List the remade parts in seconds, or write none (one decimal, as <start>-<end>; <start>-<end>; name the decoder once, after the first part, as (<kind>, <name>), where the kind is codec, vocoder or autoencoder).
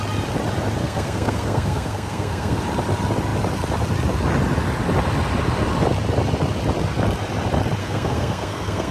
0.8-2.6 (codec, SNAC); 7.8-8.9